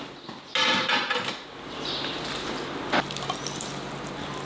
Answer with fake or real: real